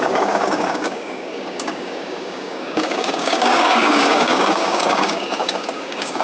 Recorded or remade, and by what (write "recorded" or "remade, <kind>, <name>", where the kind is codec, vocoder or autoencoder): remade, codec, DAC